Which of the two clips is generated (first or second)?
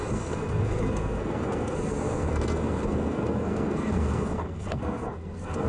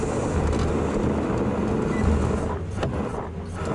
first